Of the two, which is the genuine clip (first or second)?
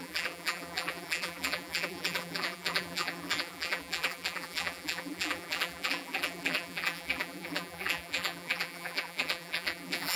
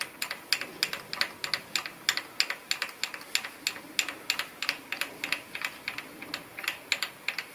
second